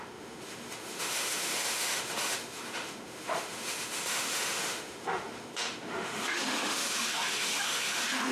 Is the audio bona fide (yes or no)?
no